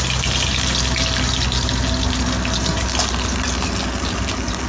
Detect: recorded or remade recorded